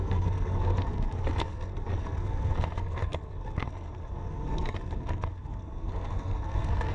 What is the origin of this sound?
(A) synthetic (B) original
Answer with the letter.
A